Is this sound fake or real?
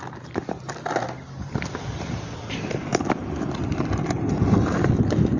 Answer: real